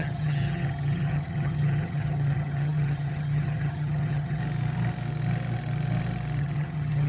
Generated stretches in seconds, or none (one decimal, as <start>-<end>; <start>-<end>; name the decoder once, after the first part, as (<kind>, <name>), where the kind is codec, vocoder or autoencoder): 0.0-4.4 (vocoder, HiFi-GAN); 6.4-7.1